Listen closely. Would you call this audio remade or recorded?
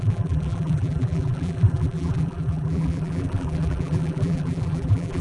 remade